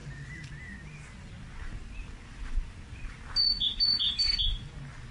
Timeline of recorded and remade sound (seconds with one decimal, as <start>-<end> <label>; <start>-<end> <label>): 0.0-5.1 recorded